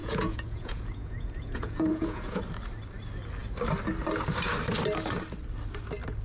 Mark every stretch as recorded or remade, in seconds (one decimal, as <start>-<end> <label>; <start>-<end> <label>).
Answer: 0.0-2.4 remade; 2.4-6.2 recorded